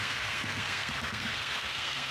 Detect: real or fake fake